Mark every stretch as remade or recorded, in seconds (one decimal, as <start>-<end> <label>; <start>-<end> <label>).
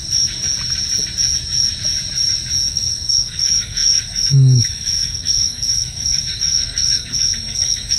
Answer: 0.0-2.7 recorded; 2.7-8.0 remade